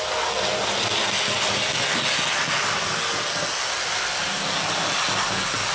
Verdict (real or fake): real